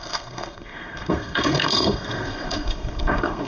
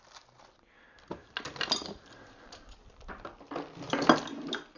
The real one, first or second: second